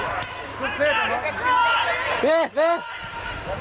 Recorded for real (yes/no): yes